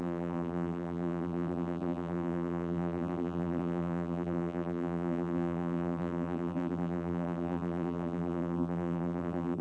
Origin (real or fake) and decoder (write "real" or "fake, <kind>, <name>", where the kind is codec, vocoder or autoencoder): fake, vocoder, BigVGAN v2